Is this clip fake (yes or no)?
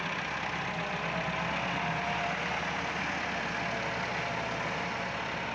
no